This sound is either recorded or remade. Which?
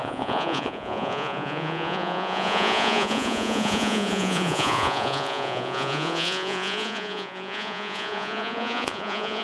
remade